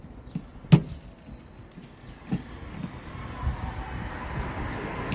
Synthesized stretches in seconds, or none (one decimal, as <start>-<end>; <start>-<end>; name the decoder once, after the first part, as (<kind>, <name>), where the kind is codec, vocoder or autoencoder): none